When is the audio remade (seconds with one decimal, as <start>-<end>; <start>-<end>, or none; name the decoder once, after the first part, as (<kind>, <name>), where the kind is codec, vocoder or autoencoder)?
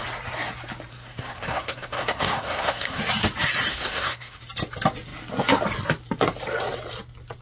0.9-3.0 (codec, SNAC); 3.7-4.4